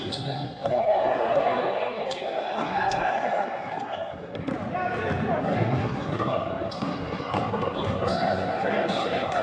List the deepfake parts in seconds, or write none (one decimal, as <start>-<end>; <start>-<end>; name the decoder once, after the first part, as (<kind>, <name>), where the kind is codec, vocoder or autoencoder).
0.0-4.5 (codec, SNAC); 5.4-9.4